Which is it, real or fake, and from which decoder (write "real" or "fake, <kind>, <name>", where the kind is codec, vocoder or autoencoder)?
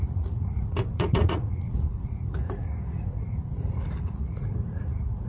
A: fake, vocoder, Vocos